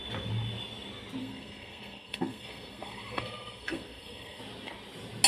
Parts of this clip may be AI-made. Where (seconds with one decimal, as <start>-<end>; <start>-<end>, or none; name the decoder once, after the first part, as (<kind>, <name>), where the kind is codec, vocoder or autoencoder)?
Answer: 1.2-4.4 (codec, SNAC)